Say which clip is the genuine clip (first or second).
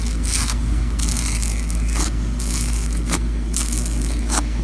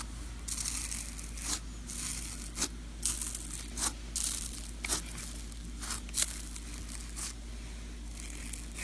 second